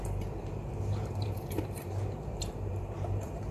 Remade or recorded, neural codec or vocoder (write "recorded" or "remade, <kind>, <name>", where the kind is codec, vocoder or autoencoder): remade, vocoder, BigVGAN v2